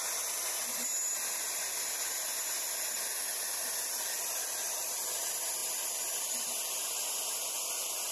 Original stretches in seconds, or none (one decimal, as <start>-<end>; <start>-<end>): 0.0-8.1